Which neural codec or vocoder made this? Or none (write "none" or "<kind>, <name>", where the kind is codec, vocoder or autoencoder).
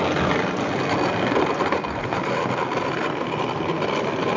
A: none